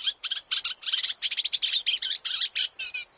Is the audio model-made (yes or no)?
no